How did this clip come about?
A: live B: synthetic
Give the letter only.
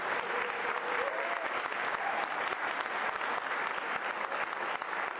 A